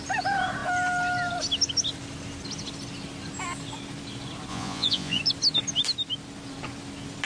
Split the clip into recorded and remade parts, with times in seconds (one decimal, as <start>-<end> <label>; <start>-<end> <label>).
0.0-4.5 recorded; 4.5-5.2 remade; 5.2-7.3 recorded

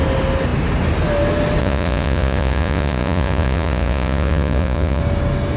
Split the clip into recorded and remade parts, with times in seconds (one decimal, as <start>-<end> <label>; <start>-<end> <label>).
0.0-1.6 recorded; 1.6-5.0 remade; 5.0-5.6 recorded

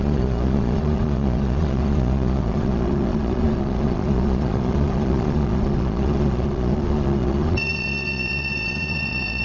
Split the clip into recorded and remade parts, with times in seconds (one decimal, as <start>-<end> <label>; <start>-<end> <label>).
0.0-9.4 remade

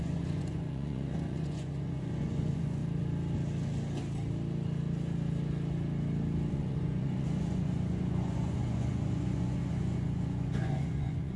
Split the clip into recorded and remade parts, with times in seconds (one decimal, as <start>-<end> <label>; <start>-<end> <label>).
0.0-2.8 remade; 2.8-6.5 recorded; 6.5-11.4 remade

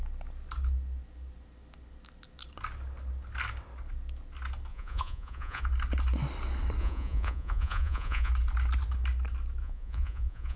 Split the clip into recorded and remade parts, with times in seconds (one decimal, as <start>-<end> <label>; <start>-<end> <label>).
0.0-4.7 recorded; 4.7-5.6 remade; 5.6-6.8 recorded; 6.8-8.3 remade; 8.3-9.6 recorded; 9.6-10.6 remade

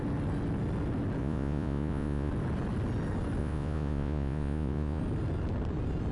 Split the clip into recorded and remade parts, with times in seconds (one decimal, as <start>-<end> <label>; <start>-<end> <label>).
0.0-1.2 recorded; 1.2-2.3 remade; 2.3-3.4 recorded; 3.4-5.0 remade; 5.0-6.1 recorded

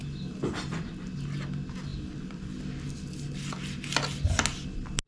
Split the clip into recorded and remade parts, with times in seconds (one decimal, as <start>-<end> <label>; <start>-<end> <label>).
0.0-5.1 recorded

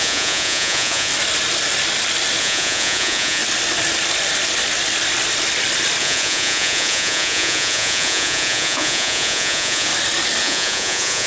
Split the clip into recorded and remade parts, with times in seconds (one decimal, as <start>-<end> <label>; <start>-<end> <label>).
0.0-1.1 remade; 1.1-2.4 recorded; 2.4-3.4 remade; 3.4-6.0 recorded; 6.0-9.9 remade; 9.9-10.4 recorded; 10.4-11.3 remade